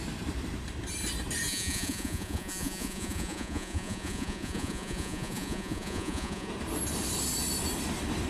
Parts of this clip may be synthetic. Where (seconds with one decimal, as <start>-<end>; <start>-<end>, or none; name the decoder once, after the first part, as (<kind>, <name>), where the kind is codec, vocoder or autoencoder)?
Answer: 1.5-6.5 (vocoder, Vocos)